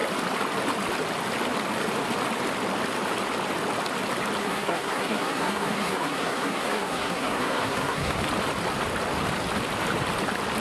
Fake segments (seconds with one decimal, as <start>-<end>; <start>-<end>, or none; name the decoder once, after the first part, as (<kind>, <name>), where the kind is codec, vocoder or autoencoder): 4.4-8.2 (codec, SNAC)